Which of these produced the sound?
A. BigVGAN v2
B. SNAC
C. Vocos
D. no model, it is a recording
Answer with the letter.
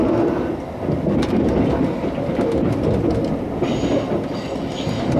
D